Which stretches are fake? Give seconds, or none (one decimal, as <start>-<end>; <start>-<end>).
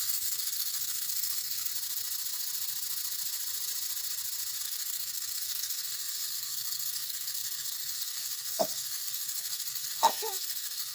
0.0-1.7; 4.6-10.9